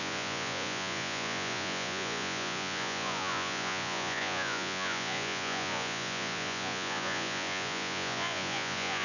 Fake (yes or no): yes